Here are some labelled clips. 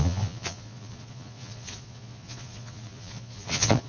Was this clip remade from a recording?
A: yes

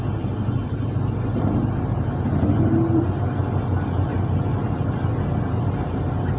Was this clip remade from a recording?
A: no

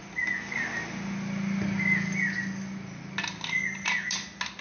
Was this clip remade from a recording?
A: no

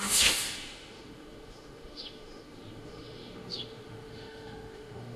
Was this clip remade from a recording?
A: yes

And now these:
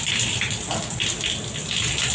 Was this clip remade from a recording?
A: no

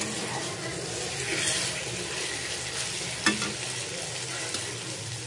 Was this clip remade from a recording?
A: no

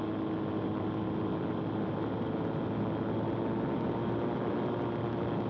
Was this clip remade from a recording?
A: no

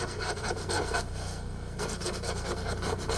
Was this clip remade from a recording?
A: yes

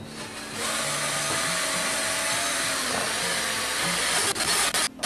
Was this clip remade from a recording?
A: no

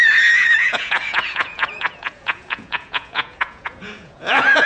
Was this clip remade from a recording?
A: yes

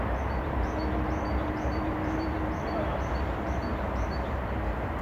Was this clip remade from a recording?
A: yes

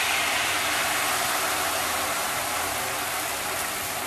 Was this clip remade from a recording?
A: no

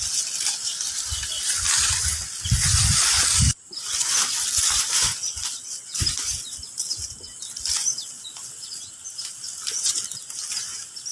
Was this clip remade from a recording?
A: no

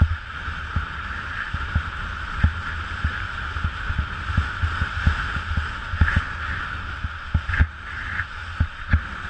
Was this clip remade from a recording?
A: no